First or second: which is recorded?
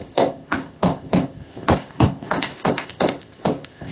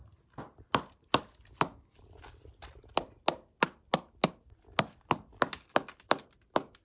second